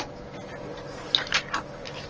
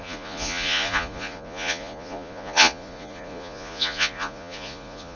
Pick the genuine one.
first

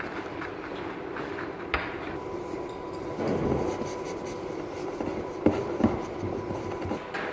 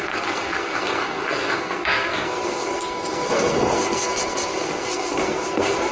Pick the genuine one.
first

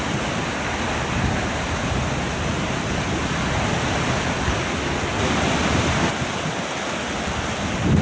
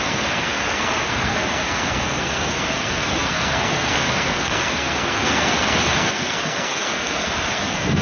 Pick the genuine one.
first